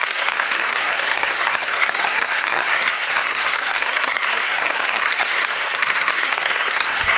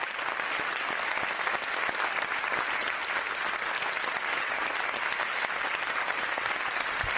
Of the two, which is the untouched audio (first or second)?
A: second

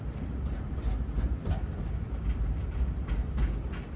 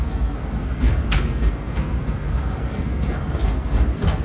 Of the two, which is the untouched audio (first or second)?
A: first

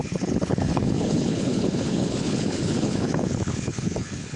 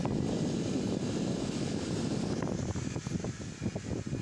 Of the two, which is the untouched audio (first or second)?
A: second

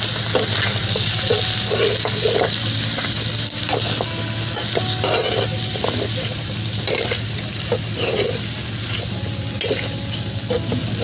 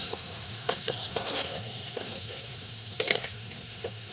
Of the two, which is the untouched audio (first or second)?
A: first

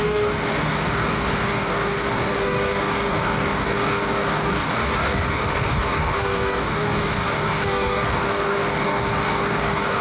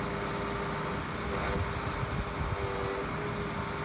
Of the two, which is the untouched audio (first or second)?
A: second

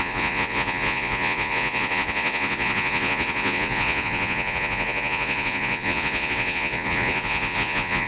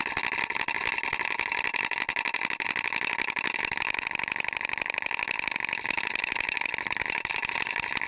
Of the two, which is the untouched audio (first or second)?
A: second